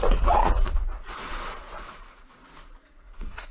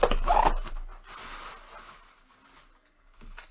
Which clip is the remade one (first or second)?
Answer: first